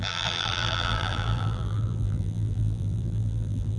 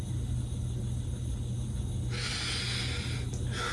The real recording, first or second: second